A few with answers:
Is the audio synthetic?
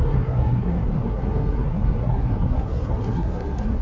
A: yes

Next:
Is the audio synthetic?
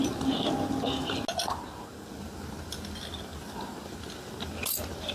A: no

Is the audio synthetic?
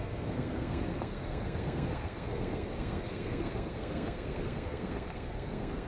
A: yes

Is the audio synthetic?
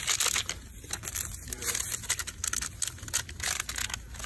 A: no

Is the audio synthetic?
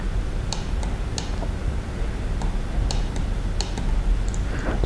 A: no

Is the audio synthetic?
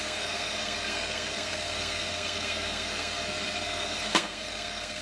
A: yes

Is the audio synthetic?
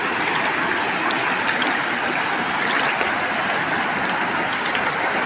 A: no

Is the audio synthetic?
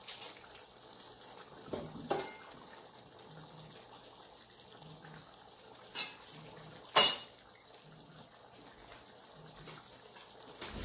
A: no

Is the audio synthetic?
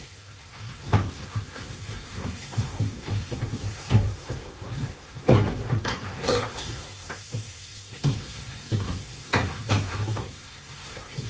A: yes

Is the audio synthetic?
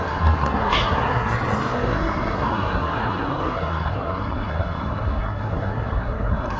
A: yes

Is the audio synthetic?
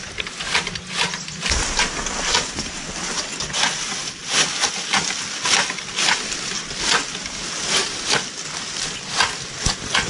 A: no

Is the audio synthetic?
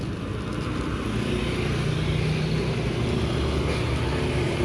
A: no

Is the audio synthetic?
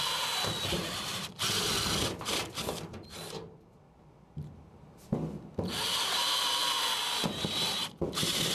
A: no